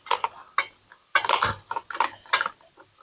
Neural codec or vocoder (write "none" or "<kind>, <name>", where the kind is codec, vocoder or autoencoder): none